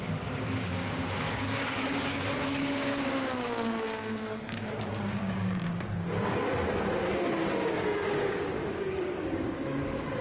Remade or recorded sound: remade